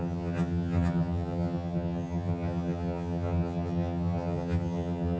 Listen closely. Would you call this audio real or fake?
fake